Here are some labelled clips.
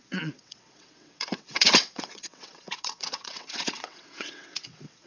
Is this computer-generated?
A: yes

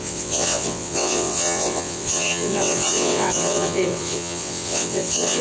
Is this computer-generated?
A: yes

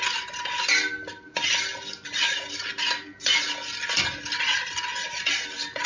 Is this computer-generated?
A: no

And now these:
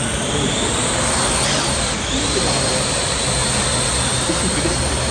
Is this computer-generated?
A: no